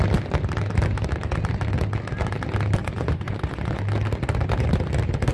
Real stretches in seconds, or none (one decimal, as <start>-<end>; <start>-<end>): 0.0-2.8; 3.8-5.3